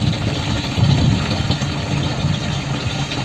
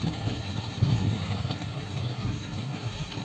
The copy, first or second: second